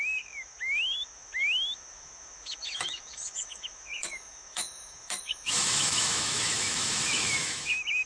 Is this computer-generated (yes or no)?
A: yes